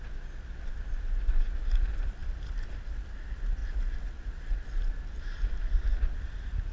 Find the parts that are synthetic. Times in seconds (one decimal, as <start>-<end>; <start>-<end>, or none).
none

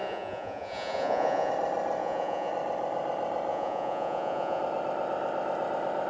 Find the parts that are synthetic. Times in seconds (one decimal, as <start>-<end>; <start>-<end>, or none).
0.0-1.5; 2.0-2.5; 3.5-4.6

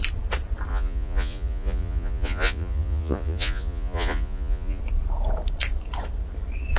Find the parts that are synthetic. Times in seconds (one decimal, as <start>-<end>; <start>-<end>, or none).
0.7-4.8

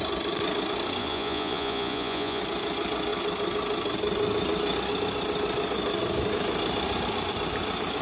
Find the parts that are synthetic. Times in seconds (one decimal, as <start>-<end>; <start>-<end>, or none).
1.0-2.4

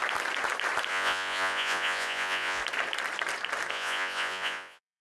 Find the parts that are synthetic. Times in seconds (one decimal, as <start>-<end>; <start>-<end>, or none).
0.9-2.6; 3.7-5.0

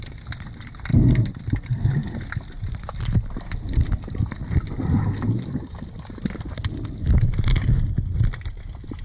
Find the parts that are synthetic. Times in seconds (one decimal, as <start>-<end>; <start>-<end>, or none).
none

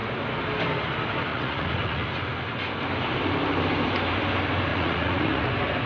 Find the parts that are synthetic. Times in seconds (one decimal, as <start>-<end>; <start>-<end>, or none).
1.3-2.1; 4.7-5.5